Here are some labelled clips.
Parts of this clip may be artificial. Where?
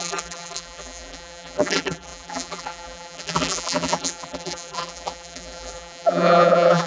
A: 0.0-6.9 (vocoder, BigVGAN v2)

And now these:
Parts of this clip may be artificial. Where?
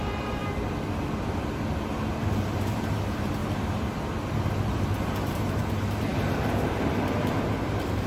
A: 0.0-0.4 (vocoder, BigVGAN v2); 2.3-3.4; 4.5-8.1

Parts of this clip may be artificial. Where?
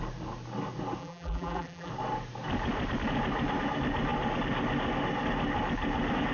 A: 1.0-1.9 (vocoder, BigVGAN v2)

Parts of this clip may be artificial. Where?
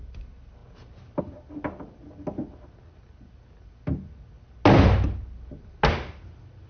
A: 0.6-1.2 (vocoder, BigVGAN v2)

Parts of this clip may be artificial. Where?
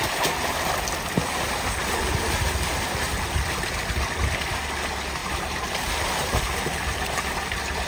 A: 1.8-3.4 (vocoder, BigVGAN v2); 5.2-7.3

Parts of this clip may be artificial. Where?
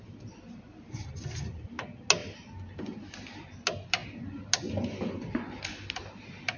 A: none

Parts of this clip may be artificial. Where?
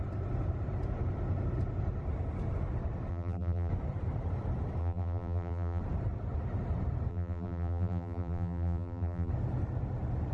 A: 3.1-3.7 (vocoder, BigVGAN v2); 4.8-5.8; 7.1-9.3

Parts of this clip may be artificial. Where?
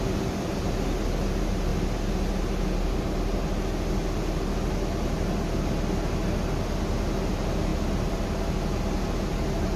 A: none